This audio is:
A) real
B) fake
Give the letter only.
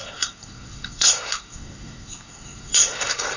B